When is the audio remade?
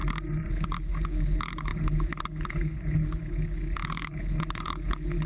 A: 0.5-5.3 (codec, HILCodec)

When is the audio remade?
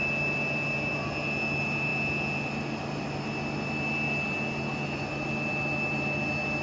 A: none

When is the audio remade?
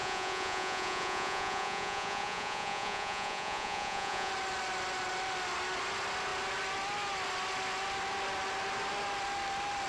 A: 0.0-4.3 (vocoder, Vocos)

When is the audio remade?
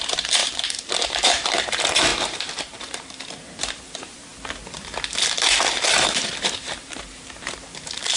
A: 0.0-4.3 (vocoder, BigVGAN v2); 5.2-8.2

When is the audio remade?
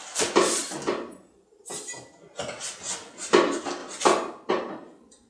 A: none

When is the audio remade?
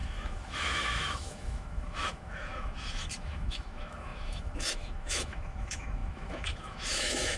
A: 0.0-7.4 (autoencoder, DAC-VAE)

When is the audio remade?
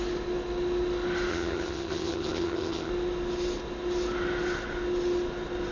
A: 1.3-2.9 (vocoder, HiFi-GAN)